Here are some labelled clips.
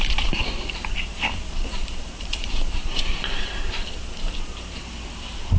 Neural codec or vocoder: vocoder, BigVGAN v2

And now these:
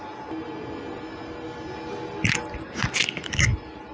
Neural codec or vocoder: none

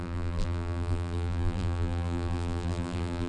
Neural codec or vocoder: vocoder, BigVGAN v2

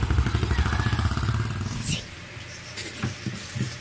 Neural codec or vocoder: none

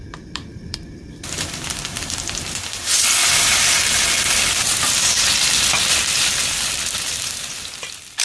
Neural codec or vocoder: vocoder, BigVGAN v2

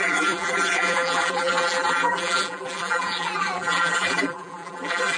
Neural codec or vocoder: vocoder, BigVGAN v2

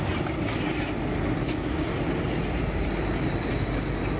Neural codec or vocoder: none